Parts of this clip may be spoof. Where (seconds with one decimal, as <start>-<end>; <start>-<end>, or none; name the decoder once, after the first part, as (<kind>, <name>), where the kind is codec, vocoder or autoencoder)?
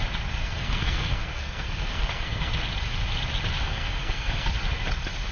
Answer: 0.4-2.5 (codec, SNAC); 3.6-4.5